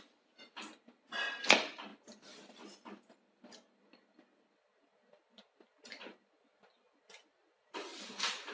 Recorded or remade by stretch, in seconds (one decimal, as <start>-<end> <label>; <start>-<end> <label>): 0.0-7.9 recorded; 7.9-8.5 remade